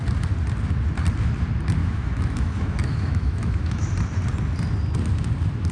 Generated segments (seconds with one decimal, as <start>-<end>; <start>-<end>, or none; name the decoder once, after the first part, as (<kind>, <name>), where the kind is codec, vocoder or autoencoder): 1.8-3.9 (autoencoder, DAC-VAE)